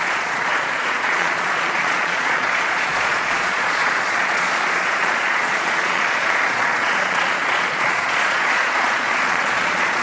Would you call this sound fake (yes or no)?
yes